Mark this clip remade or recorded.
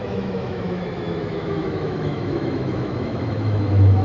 remade